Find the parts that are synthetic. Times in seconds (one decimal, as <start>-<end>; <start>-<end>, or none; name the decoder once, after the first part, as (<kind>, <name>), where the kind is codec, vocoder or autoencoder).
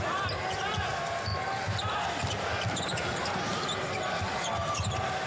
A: none